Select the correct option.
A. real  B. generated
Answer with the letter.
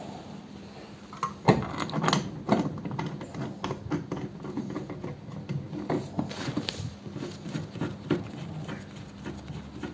A